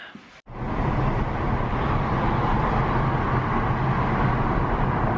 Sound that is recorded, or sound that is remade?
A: recorded